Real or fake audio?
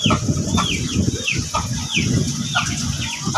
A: fake